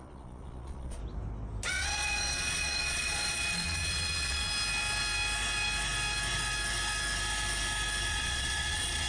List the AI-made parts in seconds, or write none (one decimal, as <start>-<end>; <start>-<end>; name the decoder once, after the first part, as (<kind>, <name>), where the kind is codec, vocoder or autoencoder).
0.0-1.0 (vocoder, Vocos); 1.7-4.5; 8.1-9.1